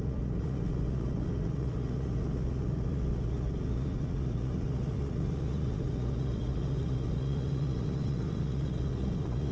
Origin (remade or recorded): remade